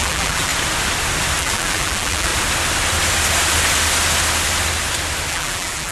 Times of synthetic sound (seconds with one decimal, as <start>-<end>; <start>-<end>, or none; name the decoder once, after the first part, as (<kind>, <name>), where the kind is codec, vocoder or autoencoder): 0.0-0.5 (vocoder, BigVGAN v2); 1.4-2.3; 5.3-5.9